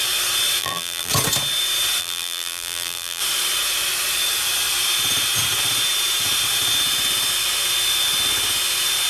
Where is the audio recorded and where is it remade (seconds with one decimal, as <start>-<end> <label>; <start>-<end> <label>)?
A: 0.0-0.6 recorded; 0.6-1.1 remade; 1.1-2.0 recorded; 2.0-3.2 remade; 3.2-9.1 recorded